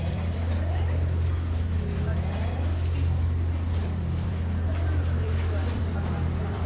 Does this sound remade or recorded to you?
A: remade